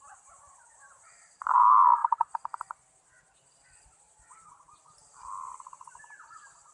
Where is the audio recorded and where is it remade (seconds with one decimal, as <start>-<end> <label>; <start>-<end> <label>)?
0.0-2.0 remade; 2.0-4.0 recorded; 4.0-6.7 remade